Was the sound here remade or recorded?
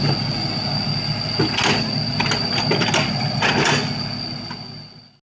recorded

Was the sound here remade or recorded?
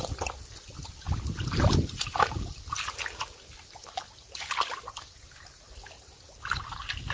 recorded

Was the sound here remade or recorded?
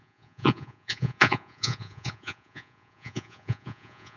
remade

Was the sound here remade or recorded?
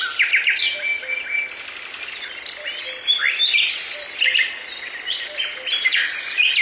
recorded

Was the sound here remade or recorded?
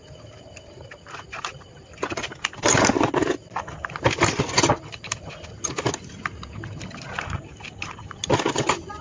recorded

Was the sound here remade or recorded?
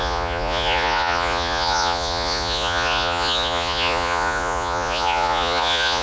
remade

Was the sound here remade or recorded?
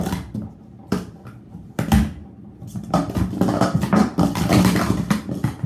recorded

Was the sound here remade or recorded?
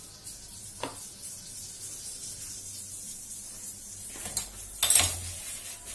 recorded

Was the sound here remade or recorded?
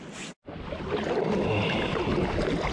recorded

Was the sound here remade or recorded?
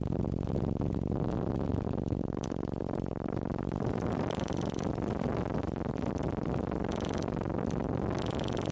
recorded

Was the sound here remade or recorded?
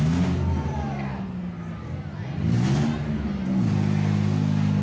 recorded